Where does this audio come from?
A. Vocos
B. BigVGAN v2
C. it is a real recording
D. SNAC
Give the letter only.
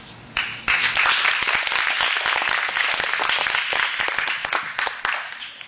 C